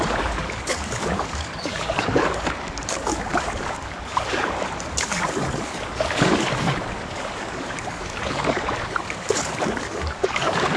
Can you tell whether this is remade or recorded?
remade